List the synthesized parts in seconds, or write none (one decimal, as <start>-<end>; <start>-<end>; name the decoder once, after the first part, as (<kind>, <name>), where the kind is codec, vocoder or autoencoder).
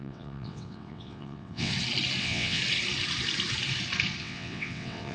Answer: 0.0-1.7 (vocoder, WaveNeXt); 2.2-2.6; 4.2-5.1